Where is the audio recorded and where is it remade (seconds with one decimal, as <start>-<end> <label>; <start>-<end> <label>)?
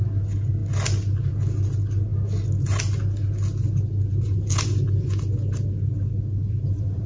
0.0-6.4 recorded; 6.4-7.1 remade